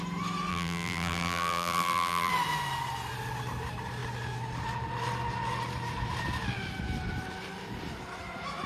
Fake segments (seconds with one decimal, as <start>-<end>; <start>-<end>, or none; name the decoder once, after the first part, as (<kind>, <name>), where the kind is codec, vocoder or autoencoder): 0.5-2.3 (vocoder, BigVGAN v2)